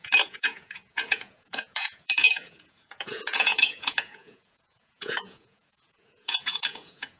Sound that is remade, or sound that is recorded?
remade